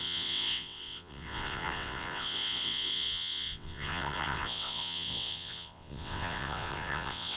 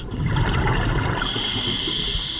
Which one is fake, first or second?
first